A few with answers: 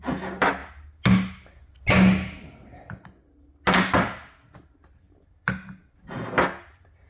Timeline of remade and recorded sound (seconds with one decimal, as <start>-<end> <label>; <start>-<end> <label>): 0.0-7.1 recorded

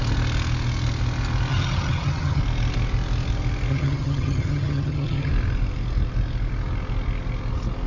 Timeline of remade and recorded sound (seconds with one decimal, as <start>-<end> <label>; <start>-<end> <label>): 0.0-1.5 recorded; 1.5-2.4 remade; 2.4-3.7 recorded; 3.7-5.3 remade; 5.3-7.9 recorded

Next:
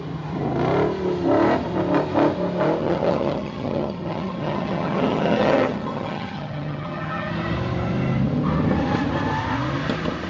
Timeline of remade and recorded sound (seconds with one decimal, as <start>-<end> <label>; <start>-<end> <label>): 0.0-2.8 recorded; 2.8-7.3 remade; 7.3-10.3 recorded